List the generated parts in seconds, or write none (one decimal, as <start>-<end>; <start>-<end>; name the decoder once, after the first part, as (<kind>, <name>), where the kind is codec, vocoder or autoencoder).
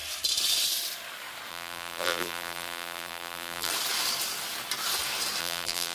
1.5-3.7 (vocoder, BigVGAN v2); 5.4-5.9